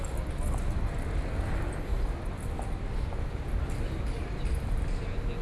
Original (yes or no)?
yes